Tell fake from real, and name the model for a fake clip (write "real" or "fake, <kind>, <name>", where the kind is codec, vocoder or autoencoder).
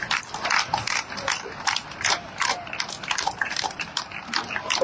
fake, vocoder, BigVGAN v2